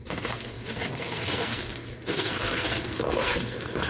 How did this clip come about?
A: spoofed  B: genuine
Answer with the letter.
A